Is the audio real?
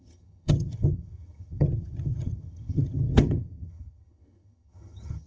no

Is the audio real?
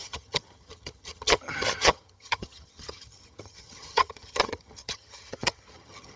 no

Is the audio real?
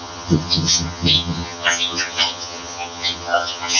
no